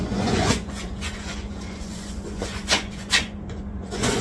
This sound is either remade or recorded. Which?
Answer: remade